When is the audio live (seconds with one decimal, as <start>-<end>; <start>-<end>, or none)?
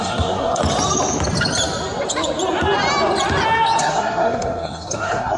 0.6-3.8